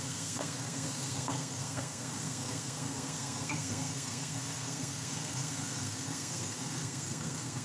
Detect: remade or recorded remade